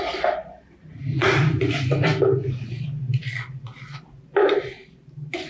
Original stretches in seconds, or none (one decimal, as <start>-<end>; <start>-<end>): 2.1-2.6